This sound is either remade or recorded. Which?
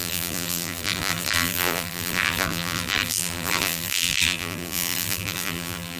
remade